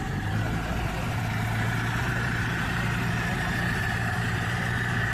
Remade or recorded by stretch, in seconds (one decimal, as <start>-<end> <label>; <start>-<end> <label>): 0.0-0.7 remade; 0.7-2.0 recorded; 2.0-5.1 remade